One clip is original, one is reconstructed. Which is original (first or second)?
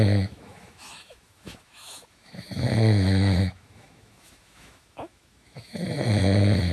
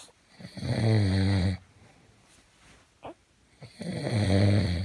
second